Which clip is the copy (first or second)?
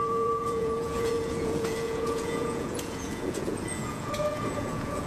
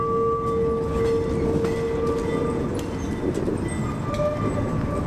first